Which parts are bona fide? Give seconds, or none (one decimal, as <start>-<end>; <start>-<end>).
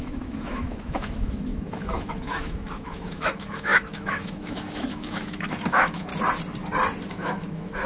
6.1-7.1